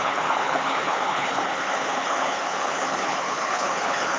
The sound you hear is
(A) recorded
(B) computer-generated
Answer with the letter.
B